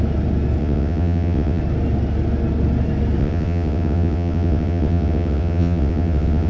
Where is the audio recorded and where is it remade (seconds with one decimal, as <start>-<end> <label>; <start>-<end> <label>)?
0.0-0.6 recorded; 0.6-1.6 remade; 1.6-3.2 recorded; 3.2-6.5 remade